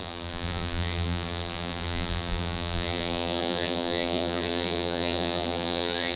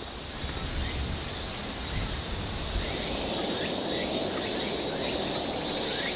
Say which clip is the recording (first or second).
second